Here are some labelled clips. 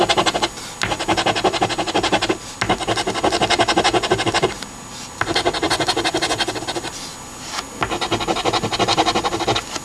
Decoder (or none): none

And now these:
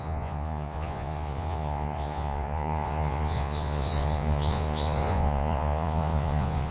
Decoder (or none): vocoder, Vocos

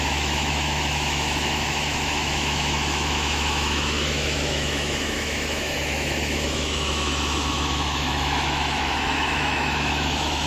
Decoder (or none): autoencoder, DAC-VAE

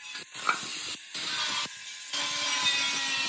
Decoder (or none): none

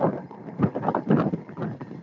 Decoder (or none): vocoder, BigVGAN v2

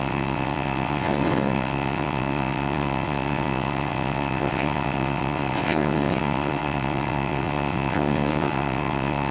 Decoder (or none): vocoder, WaveNeXt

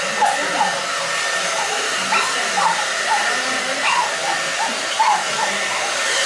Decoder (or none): none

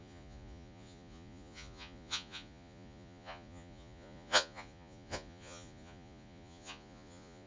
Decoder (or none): vocoder, Vocos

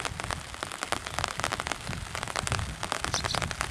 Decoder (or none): none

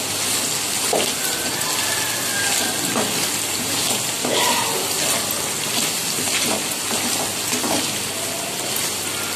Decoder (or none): none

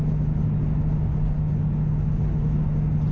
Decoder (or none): none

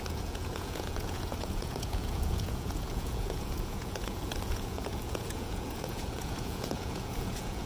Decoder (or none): vocoder, Vocos